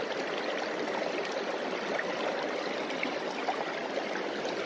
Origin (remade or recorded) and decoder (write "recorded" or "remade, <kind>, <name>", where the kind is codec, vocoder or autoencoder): recorded